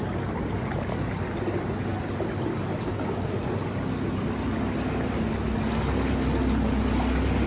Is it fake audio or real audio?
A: real